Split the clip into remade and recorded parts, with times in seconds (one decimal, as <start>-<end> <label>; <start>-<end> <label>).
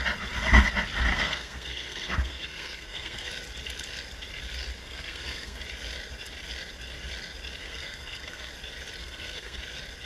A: 0.0-1.1 recorded; 1.1-3.3 remade; 3.3-4.8 recorded; 4.8-5.6 remade; 5.6-7.6 recorded; 7.6-8.5 remade; 8.5-9.0 recorded; 9.0-9.6 remade; 9.6-10.1 recorded